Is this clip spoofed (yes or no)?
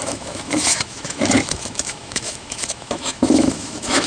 yes